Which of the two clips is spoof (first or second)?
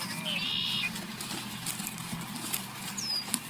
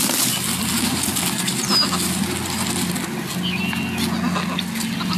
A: first